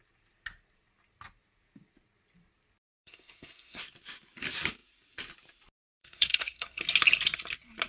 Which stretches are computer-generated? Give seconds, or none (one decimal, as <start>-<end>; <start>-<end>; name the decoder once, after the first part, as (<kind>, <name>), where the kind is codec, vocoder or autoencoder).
3.0-3.8 (codec, SNAC); 6.0-6.8